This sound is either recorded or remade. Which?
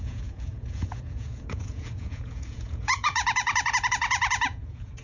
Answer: remade